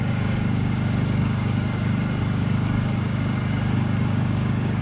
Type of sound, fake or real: fake